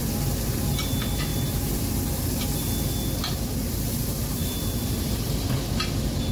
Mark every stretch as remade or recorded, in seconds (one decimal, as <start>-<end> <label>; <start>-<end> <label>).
0.0-1.3 recorded; 1.3-1.8 remade; 1.8-4.4 recorded; 4.4-5.5 remade; 5.5-6.3 recorded

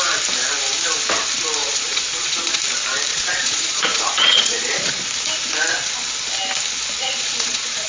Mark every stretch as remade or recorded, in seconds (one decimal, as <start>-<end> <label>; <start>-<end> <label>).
0.0-1.6 recorded; 1.6-2.6 remade; 2.6-3.1 recorded; 3.1-4.9 remade; 4.9-7.0 recorded; 7.0-7.9 remade